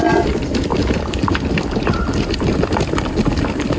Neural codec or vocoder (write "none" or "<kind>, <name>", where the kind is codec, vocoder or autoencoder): vocoder, BigVGAN v2